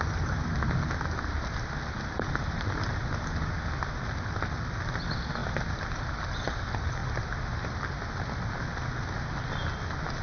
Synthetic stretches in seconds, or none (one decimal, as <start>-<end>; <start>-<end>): none